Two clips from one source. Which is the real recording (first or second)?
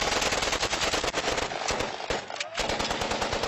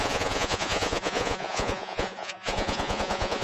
first